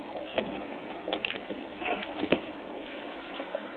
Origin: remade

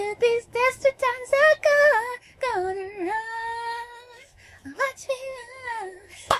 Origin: remade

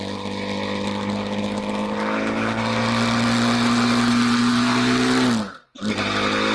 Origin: recorded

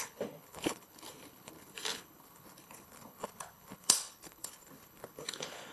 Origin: remade